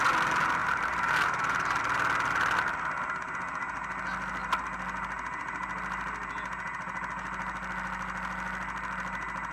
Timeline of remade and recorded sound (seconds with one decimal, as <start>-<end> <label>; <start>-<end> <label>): 0.0-0.6 recorded; 0.6-1.8 remade; 1.8-9.5 recorded